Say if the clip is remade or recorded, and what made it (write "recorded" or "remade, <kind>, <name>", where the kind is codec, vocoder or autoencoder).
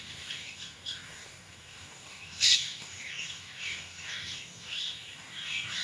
remade, codec, DAC